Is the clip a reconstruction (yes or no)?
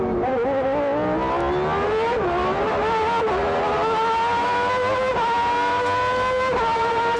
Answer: no